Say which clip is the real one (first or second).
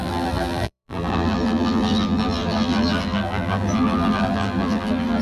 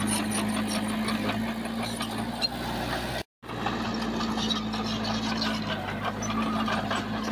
second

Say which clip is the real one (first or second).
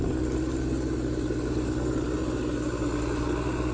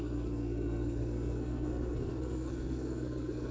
first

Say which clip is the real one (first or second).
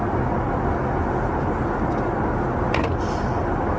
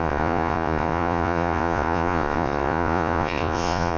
first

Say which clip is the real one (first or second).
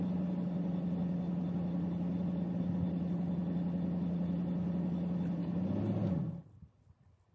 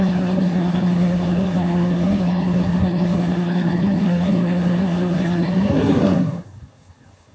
first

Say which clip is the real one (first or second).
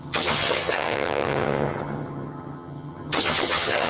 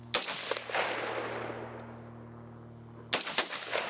second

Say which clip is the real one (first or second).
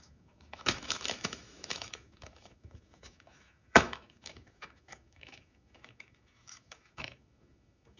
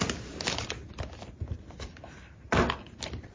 second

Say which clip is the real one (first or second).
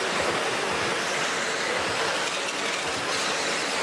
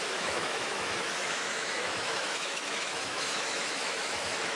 first